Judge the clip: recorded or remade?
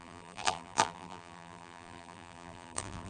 remade